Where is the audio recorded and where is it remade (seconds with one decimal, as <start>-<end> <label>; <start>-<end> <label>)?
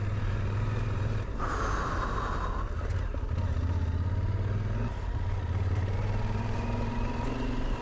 0.0-1.6 remade; 1.6-5.6 recorded; 5.6-7.8 remade